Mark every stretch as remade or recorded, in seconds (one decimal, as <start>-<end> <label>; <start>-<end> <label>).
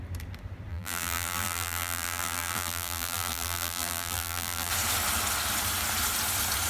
0.0-0.7 recorded; 0.7-4.7 remade; 4.7-6.7 recorded